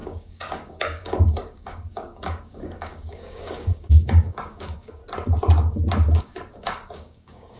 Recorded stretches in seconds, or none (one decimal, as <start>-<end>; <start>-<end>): 5.0-6.2